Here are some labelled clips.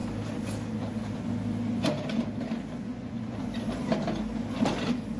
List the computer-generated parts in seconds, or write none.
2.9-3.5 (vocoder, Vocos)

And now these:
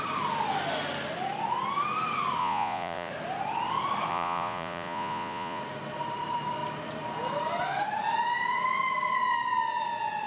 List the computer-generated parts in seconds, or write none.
2.4-3.1 (vocoder, Vocos); 4.1-5.6

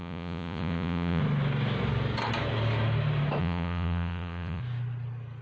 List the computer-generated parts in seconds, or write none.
0.0-1.2 (vocoder, Vocos); 3.4-4.6

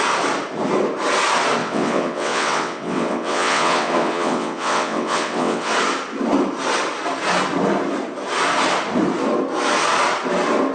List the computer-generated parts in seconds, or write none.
1.6-5.7 (vocoder, WaveNeXt)

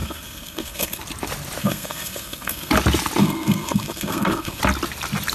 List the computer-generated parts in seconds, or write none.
0.0-1.0 (codec, SNAC); 1.6-2.7; 3.2-4.6

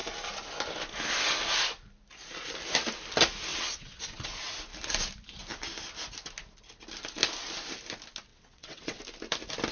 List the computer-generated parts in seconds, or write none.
3.5-4.5 (vocoder, WaveNeXt); 8.3-9.0

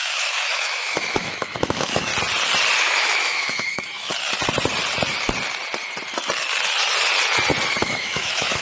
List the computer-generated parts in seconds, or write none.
0.0-2.1 (autoencoder, DAC-VAE); 2.8-4.1; 7.8-8.6